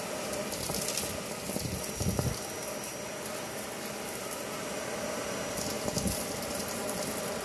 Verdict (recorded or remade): recorded